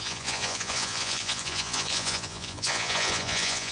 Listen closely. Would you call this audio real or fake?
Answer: fake